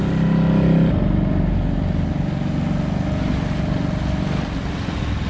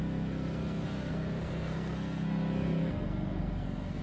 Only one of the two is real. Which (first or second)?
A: first